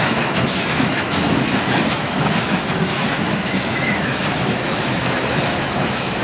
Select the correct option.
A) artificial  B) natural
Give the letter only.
A